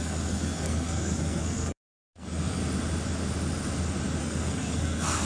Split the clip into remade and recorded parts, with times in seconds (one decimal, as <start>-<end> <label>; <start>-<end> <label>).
0.0-2.6 remade; 2.6-4.2 recorded; 4.2-5.3 remade